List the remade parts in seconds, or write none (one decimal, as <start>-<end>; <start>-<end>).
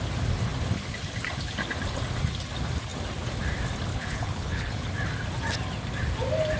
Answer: 3.9-4.8